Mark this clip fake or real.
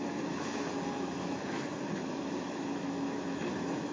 fake